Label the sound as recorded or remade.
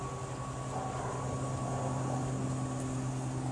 recorded